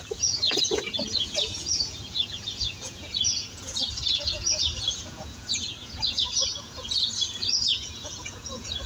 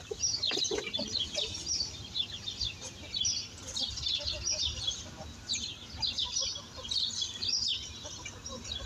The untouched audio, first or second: second